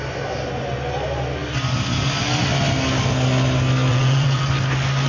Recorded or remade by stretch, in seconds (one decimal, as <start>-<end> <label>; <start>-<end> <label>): 0.0-3.9 recorded; 3.9-4.5 remade; 4.5-5.1 recorded